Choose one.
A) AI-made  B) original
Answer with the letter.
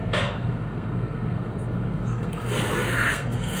A